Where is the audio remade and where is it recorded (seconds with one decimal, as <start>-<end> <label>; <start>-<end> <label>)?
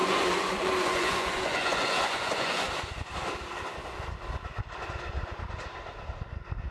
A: 0.0-2.7 remade; 2.7-6.7 recorded